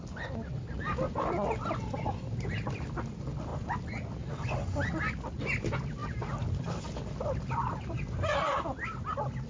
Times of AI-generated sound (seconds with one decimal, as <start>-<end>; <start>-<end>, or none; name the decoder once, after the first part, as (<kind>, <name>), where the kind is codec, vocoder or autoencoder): none